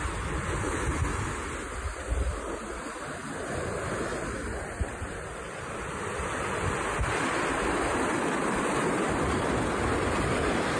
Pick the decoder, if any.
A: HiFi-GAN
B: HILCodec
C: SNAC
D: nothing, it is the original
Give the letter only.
D